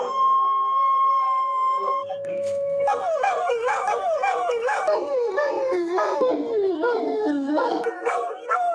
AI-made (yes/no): yes